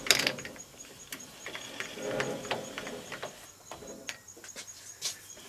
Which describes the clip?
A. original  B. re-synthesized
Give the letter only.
A